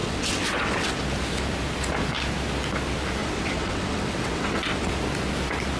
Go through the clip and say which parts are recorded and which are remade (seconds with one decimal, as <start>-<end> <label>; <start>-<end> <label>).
0.0-1.0 remade; 1.0-3.2 recorded; 3.2-4.9 remade; 4.9-5.8 recorded